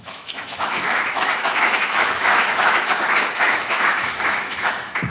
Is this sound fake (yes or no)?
yes